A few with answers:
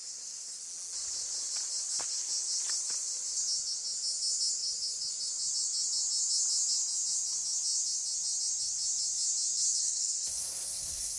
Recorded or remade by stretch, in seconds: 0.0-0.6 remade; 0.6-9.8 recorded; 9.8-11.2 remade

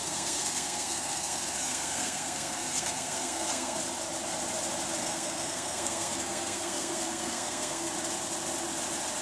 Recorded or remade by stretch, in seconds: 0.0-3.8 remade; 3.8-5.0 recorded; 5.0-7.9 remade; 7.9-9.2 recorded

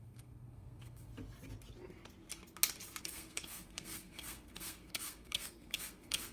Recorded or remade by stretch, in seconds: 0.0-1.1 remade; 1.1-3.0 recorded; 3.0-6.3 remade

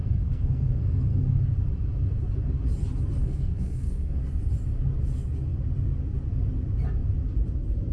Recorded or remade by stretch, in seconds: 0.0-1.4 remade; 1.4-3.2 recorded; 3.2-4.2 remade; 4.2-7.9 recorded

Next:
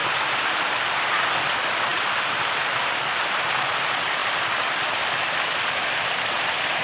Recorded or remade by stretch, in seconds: 0.0-6.8 recorded

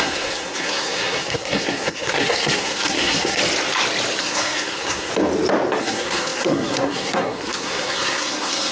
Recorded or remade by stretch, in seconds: 0.0-3.4 remade; 3.4-4.2 recorded; 4.2-5.1 remade; 5.1-5.8 recorded; 5.8-8.7 remade